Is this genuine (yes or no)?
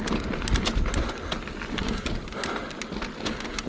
yes